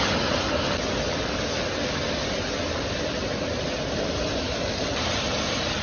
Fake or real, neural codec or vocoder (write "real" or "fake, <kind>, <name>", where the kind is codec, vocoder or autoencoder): real